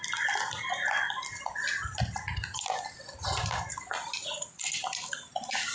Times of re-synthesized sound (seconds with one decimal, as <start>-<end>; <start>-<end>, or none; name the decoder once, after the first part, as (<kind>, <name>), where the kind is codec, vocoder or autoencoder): none